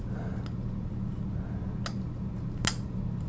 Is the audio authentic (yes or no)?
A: yes